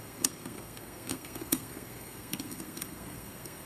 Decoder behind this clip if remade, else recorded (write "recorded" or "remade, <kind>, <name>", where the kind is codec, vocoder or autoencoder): remade, codec, SNAC